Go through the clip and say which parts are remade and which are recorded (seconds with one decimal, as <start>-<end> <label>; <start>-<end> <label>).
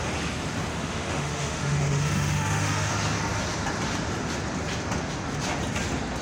0.0-0.7 recorded; 0.7-2.9 remade; 2.9-6.2 recorded